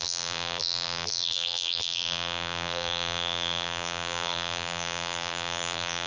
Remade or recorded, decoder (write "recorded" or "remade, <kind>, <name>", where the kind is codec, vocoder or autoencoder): remade, vocoder, BigVGAN v2